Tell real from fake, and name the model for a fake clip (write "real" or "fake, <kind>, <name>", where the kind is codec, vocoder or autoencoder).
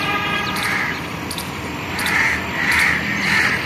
fake, vocoder, BigVGAN v2